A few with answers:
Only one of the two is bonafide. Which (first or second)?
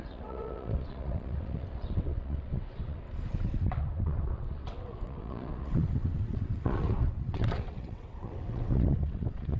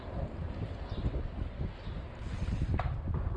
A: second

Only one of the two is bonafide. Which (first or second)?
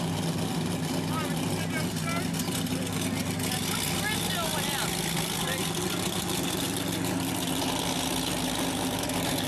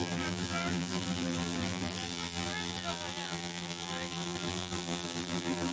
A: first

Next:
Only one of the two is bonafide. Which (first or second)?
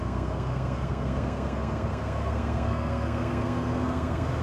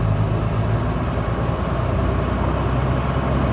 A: second